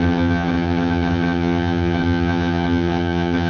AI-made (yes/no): yes